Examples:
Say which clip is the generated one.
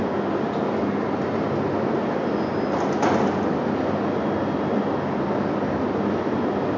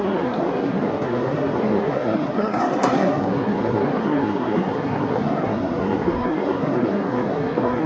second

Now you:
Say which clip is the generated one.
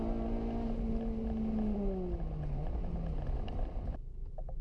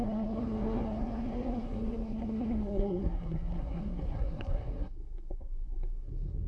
second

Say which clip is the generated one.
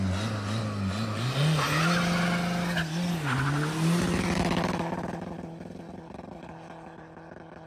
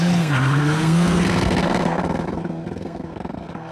second